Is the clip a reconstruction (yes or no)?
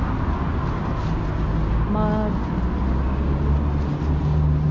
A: no